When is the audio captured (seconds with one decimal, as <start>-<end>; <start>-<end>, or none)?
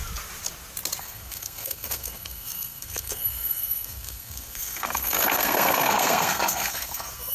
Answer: 0.0-1.0